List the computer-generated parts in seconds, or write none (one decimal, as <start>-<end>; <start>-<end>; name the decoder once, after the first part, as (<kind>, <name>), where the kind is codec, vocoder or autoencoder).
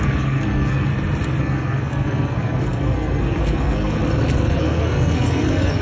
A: 0.0-0.9 (codec, SNAC); 1.4-4.0; 4.5-5.8